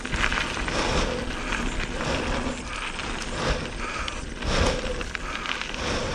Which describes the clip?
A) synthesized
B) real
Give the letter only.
B